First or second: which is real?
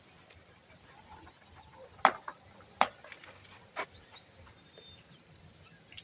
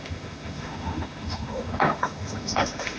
first